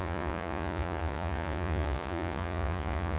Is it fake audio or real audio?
fake